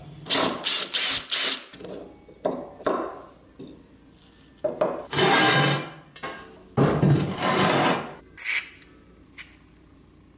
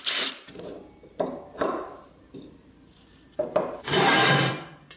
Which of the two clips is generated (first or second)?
second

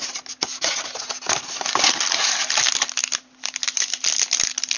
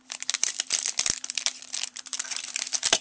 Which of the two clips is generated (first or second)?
second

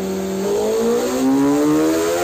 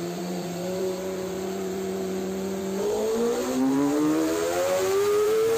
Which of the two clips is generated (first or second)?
second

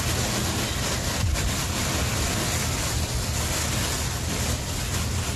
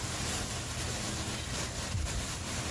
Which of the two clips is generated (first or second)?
first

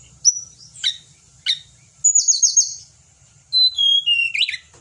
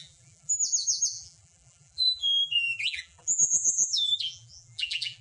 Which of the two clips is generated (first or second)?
second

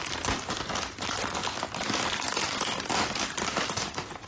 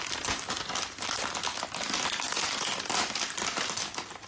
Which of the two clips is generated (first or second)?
first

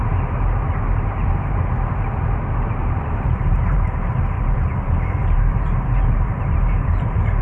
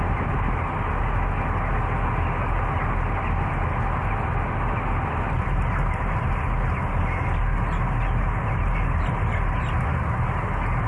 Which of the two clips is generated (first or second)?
first